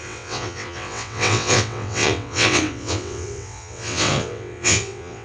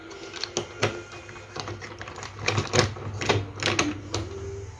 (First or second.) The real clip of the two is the second